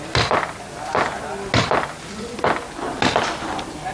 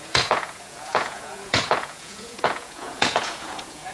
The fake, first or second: second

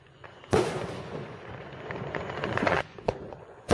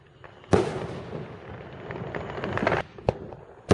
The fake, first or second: first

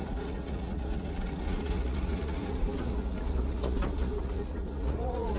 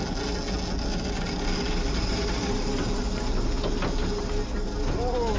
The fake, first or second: first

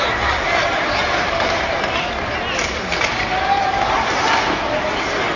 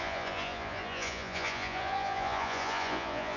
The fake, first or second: second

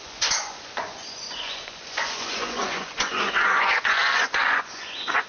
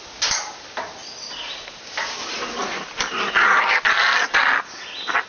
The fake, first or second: first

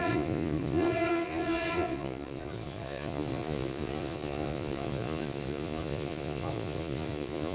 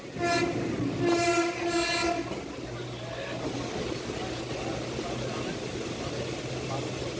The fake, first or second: first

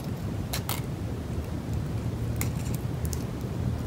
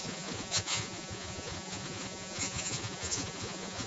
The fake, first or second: second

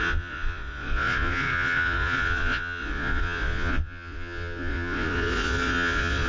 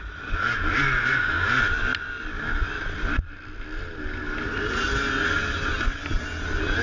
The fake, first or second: first